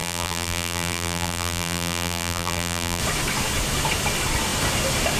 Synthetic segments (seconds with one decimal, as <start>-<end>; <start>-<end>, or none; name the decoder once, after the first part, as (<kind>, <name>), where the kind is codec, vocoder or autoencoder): 0.0-3.0 (vocoder, BigVGAN v2)